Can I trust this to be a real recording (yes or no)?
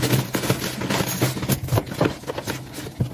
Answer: yes